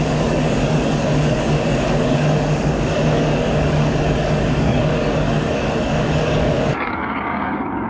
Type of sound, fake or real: fake